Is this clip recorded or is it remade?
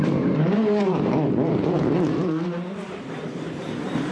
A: remade